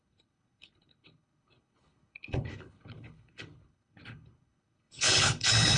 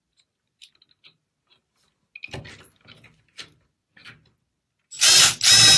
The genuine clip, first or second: second